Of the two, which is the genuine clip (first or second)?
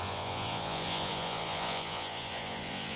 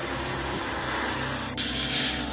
second